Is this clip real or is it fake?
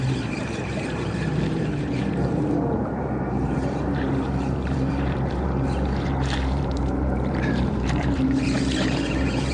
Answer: fake